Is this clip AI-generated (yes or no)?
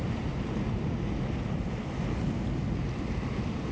no